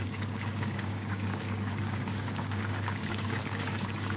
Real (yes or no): no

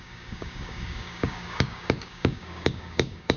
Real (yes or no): no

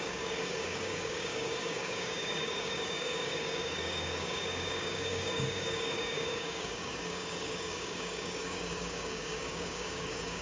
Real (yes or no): no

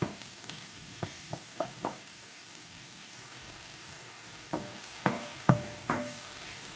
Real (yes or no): no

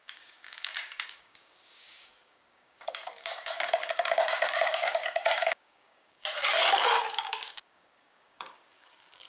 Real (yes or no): no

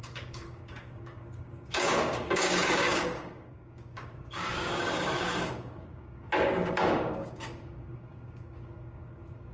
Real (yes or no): no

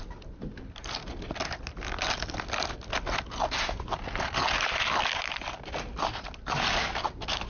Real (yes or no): yes